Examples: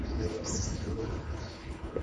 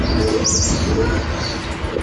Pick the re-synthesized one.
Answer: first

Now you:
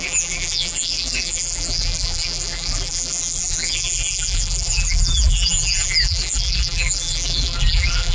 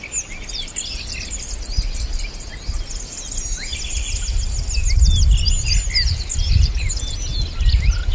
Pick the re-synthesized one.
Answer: first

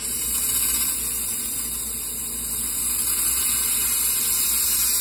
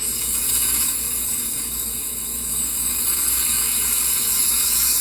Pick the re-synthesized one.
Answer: second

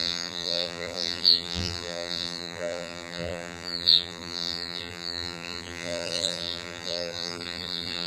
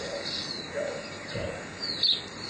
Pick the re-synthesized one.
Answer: first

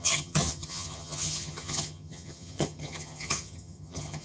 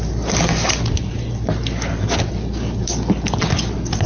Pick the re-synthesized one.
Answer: first